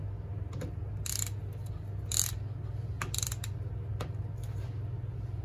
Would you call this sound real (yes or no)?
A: yes